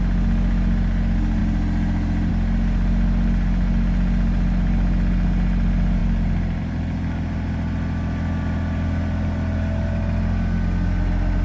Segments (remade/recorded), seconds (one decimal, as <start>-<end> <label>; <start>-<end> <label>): 0.0-11.4 recorded